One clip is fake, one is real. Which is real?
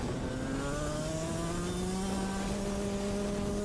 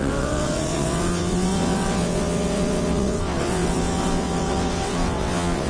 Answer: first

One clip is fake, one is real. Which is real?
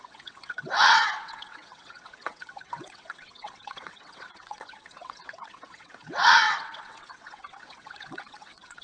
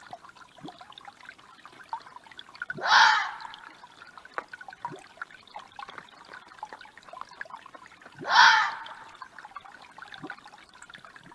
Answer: second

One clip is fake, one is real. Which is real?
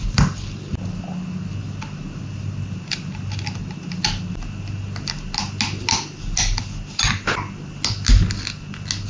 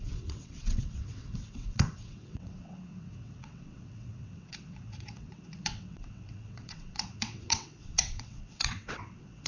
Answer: first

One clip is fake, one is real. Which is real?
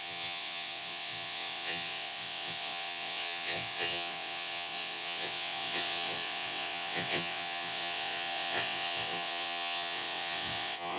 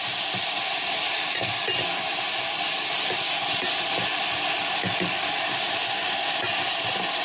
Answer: second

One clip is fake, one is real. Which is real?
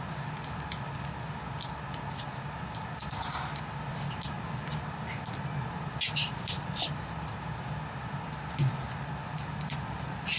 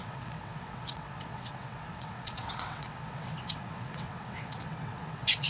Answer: first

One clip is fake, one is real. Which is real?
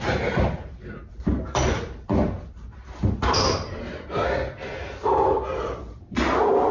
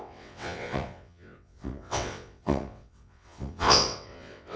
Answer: first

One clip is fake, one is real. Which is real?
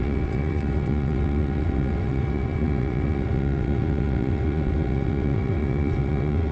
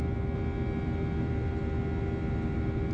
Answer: second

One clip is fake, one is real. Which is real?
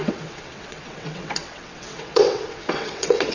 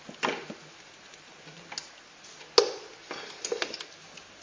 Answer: second